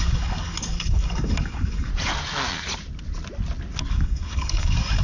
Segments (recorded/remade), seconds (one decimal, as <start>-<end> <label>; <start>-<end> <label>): 0.0-1.9 remade; 1.9-3.9 recorded; 3.9-5.0 remade